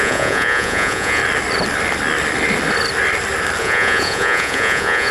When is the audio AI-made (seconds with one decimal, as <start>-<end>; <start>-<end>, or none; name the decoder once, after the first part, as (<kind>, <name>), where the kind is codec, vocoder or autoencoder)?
0.0-1.2 (vocoder, Vocos); 3.6-5.1